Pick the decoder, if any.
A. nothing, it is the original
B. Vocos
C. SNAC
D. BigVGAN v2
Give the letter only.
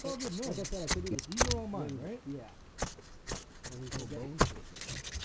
A